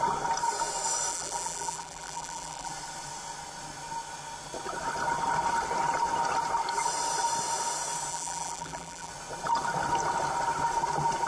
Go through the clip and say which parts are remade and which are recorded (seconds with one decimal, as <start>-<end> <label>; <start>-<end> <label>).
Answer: 0.0-1.1 recorded; 1.1-2.7 remade; 2.7-8.1 recorded; 8.1-9.1 remade; 9.1-11.3 recorded